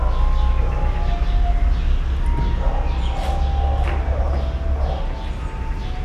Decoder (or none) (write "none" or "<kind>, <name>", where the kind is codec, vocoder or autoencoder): none